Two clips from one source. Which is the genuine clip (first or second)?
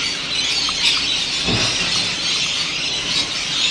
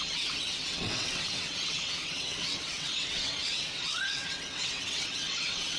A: first